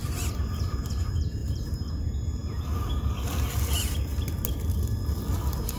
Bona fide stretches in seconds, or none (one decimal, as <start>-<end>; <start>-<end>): 0.0-1.4; 1.9-5.8